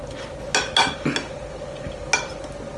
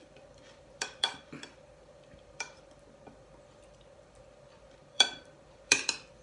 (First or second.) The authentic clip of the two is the first